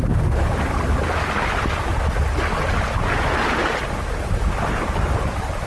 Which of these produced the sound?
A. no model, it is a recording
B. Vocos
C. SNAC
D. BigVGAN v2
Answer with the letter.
A